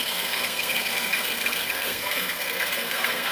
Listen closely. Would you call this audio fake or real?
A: fake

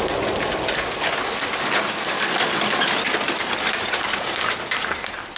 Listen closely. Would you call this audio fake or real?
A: real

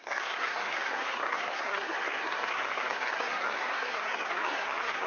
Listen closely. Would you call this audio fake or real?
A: fake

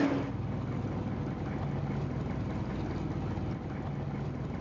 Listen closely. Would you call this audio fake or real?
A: real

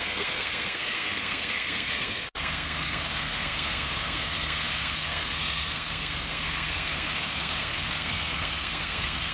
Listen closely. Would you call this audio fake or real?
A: fake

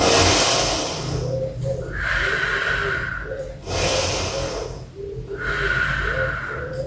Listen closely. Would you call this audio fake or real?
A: real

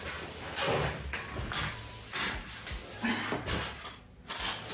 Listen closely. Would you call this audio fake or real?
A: real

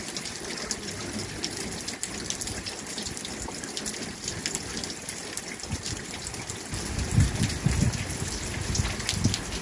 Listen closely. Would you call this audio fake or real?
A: real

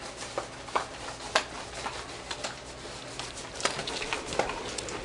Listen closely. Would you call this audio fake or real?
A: real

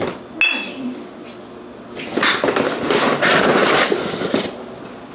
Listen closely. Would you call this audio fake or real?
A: real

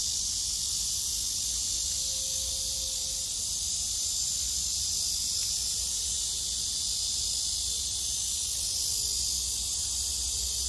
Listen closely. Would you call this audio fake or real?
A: real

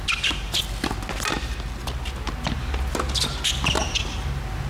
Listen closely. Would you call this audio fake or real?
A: real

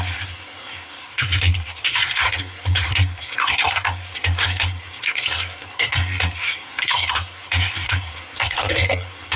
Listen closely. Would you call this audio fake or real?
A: fake